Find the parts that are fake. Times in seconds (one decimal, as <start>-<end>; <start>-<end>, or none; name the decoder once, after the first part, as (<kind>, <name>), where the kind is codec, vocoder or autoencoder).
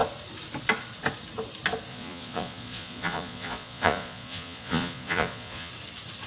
1.9-5.7 (vocoder, Vocos)